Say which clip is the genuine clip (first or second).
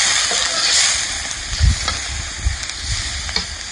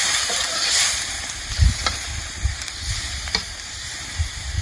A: first